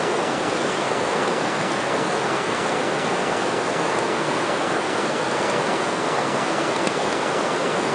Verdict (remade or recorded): remade